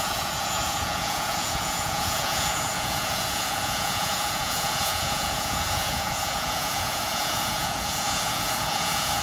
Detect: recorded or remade remade